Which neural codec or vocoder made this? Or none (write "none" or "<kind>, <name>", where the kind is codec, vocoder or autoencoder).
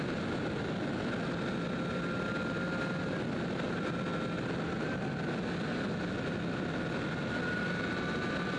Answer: none